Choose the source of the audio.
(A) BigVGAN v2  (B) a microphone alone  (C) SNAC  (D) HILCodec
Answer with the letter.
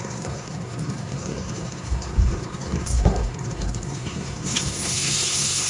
C